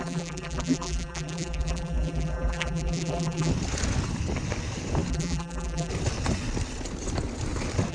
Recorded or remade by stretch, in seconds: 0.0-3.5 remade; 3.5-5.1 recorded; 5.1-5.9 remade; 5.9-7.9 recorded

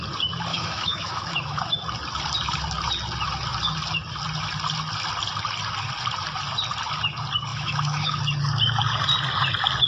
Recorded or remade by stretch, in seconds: 0.0-0.5 recorded; 0.5-1.6 remade; 1.6-7.5 recorded; 7.5-8.2 remade; 8.2-9.9 recorded

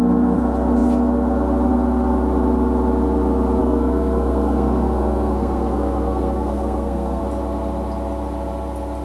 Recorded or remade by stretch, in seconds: 0.0-3.6 recorded; 3.6-7.2 remade; 7.2-9.0 recorded

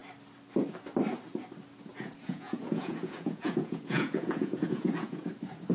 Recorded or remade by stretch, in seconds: 0.0-1.9 recorded; 1.9-5.3 remade; 5.3-5.7 recorded